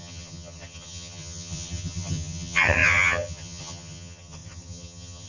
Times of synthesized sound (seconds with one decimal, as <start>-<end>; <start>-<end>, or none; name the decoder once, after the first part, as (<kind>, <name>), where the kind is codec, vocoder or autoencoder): 0.0-5.3 (vocoder, HiFi-GAN)